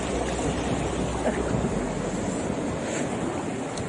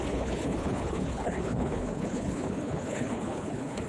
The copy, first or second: second